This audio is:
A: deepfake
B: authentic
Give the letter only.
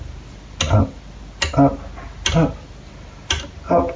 B